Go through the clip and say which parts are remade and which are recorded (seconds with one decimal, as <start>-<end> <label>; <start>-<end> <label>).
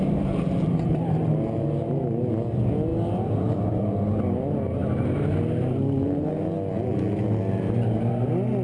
0.0-8.6 recorded